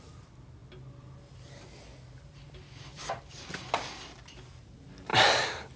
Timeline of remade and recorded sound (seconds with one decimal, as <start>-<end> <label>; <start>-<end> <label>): 0.0-5.8 recorded